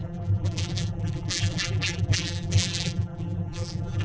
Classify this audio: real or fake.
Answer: fake